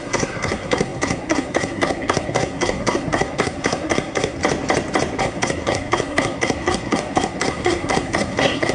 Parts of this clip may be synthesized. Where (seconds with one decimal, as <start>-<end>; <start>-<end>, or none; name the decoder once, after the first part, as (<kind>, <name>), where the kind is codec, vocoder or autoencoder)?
0.0-4.4 (codec, SNAC); 5.2-8.7